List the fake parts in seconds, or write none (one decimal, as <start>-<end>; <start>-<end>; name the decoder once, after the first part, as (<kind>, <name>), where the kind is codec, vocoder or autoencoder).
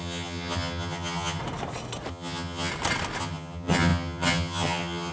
0.0-1.4 (vocoder, HiFi-GAN); 2.1-2.7; 3.2-5.1